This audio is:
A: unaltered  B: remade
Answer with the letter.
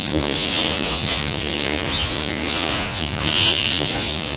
B